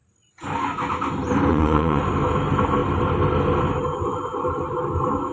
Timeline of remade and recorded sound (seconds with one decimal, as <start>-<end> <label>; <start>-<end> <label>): 0.0-1.5 recorded; 1.5-2.0 remade; 2.0-5.3 recorded